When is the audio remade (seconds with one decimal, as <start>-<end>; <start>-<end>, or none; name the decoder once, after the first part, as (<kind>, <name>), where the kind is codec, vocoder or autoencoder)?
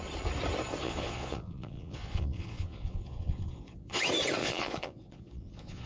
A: 0.8-4.0 (vocoder, Vocos); 4.4-5.9